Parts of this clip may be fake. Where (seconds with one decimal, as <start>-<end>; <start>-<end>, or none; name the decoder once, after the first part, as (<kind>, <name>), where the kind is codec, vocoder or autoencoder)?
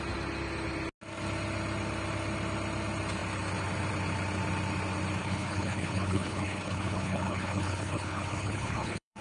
5.2-9.2 (codec, HILCodec)